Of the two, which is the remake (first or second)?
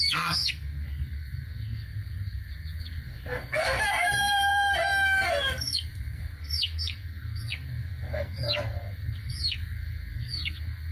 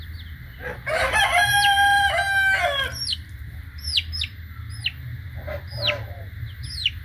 first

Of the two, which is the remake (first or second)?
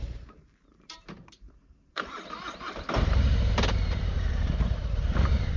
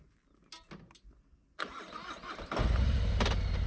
first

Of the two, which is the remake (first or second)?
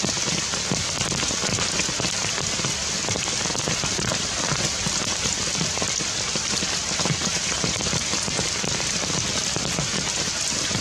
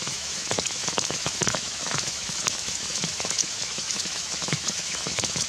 second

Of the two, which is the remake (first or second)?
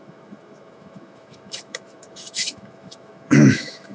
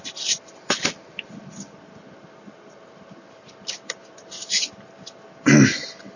first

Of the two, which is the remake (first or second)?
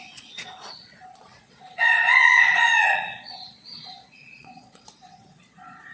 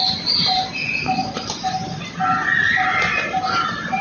first